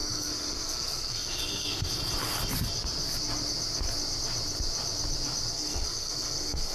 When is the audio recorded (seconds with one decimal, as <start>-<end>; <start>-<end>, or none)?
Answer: 2.0-5.5